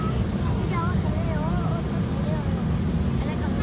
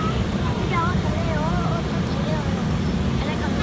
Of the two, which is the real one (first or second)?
first